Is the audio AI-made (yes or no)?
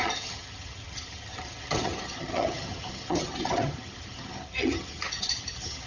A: yes